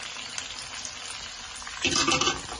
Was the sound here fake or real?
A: real